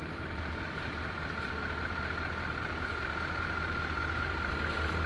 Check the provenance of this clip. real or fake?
fake